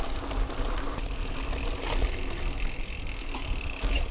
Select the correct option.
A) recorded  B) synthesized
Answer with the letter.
A